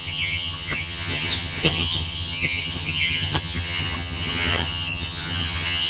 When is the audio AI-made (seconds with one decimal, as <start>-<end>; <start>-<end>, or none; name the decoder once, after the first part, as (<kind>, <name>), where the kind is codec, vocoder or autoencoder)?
0.0-5.9 (vocoder, HiFi-GAN)